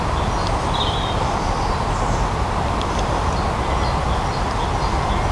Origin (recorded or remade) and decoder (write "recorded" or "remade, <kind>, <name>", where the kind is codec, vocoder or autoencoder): recorded